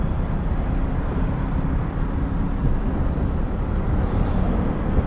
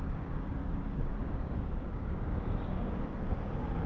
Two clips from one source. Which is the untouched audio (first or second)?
first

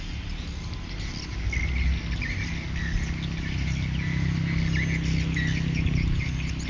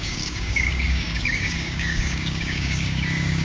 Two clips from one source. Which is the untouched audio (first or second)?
first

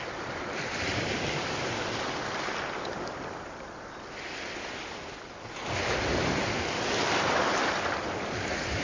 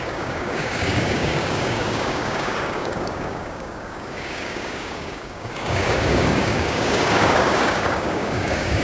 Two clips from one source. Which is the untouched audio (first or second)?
first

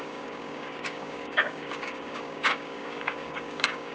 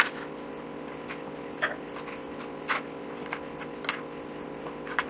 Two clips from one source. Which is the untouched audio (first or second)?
second